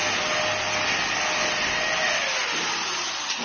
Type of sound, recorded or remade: recorded